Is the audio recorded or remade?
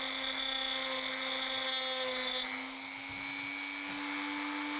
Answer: recorded